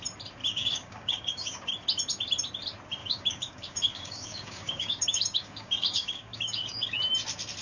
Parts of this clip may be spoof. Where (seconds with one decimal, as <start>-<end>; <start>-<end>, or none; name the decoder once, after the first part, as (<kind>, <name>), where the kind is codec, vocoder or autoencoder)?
0.4-1.7 (codec, DAC); 3.0-7.0

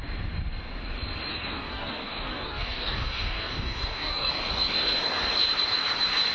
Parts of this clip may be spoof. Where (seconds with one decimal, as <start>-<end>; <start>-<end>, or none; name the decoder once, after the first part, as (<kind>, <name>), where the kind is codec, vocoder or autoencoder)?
1.3-4.3 (codec, DAC)

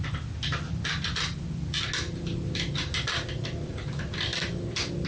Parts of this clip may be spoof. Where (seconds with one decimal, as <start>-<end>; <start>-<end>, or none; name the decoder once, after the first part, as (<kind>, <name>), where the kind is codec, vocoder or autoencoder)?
none

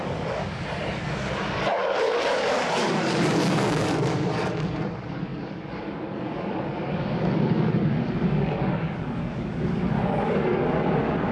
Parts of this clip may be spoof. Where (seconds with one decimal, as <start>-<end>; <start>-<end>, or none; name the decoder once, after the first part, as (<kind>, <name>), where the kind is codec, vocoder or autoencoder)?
0.0-11.3 (codec, DAC)

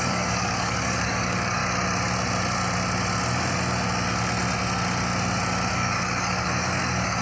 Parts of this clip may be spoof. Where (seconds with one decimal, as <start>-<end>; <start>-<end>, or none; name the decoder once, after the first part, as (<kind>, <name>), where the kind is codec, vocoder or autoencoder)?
0.0-1.6 (codec, DAC); 5.7-7.2

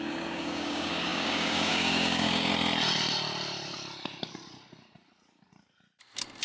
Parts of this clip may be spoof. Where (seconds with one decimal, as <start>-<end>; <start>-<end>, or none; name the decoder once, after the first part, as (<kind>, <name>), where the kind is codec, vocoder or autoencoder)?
0.0-2.5 (codec, DAC)